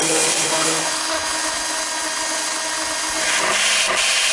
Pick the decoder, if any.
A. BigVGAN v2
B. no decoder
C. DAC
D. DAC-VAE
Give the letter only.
B